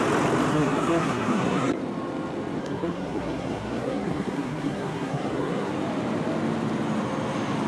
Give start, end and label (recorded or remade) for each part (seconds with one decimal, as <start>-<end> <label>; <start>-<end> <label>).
0.0-0.5 recorded; 0.5-1.8 remade; 1.8-2.6 recorded; 2.6-5.7 remade; 5.7-7.7 recorded

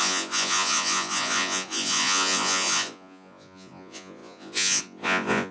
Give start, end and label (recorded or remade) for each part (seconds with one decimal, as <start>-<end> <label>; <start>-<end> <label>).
0.0-5.5 remade

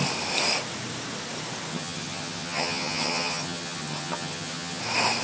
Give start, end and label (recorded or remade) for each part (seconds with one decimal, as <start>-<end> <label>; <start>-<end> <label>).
0.0-1.7 recorded; 1.7-4.8 remade; 4.8-5.2 recorded

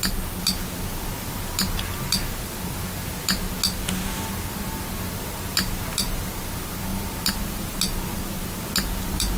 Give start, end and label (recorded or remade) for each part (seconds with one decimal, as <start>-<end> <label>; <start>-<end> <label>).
0.0-9.4 recorded

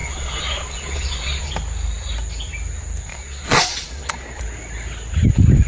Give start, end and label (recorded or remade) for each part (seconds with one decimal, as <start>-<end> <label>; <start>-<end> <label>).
0.0-1.5 remade; 1.5-3.1 recorded; 3.1-4.4 remade; 4.4-5.7 recorded

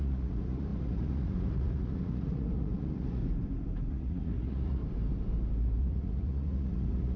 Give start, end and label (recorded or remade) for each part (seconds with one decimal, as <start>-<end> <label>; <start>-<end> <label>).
0.0-3.2 remade; 3.2-3.9 recorded; 3.9-4.8 remade; 4.8-5.8 recorded; 5.8-7.2 remade

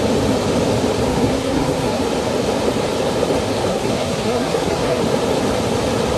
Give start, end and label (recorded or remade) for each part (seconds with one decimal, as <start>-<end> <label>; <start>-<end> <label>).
0.0-1.1 recorded; 1.1-2.0 remade; 2.0-3.7 recorded; 3.7-5.0 remade; 5.0-6.2 recorded

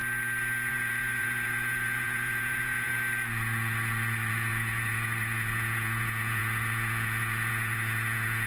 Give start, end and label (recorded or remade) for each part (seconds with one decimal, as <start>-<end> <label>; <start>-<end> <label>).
0.0-0.7 recorded; 0.7-2.9 remade; 2.9-4.3 recorded; 4.3-8.5 remade